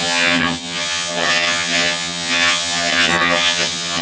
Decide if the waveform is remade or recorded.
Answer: remade